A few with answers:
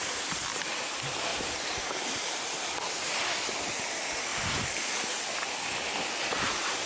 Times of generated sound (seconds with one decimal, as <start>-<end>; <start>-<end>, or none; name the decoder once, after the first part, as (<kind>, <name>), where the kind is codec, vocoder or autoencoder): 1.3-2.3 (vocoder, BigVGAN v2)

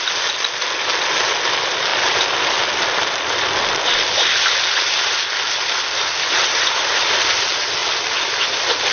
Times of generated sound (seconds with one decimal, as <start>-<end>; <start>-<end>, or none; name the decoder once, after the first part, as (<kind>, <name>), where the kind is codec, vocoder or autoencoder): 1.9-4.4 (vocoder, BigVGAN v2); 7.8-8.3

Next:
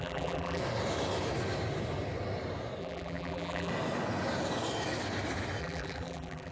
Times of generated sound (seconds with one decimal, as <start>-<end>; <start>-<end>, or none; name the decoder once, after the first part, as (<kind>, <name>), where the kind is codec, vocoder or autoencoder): 0.0-0.6 (vocoder, BigVGAN v2); 2.8-3.7; 5.6-6.5